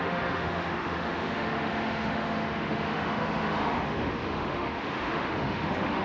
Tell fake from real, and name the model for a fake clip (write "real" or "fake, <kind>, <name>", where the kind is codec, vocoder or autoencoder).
fake, autoencoder, DAC-VAE